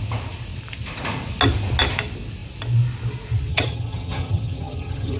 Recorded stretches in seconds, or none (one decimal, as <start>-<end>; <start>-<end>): 0.0-3.5